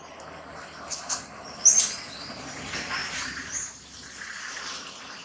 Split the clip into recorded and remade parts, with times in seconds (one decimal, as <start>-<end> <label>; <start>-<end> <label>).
0.0-1.0 recorded; 1.0-1.6 remade; 1.6-3.0 recorded; 3.0-3.7 remade; 3.7-5.2 recorded